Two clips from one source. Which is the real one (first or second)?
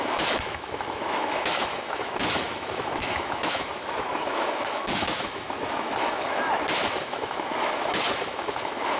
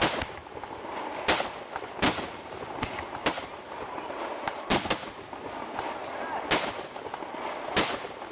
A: second